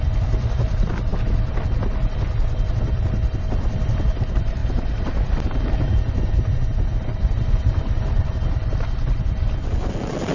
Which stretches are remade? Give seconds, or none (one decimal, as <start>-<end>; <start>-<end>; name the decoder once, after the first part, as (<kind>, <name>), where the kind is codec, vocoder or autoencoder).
7.1-8.3 (vocoder, BigVGAN v2)